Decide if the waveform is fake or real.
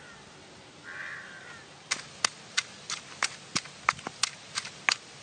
real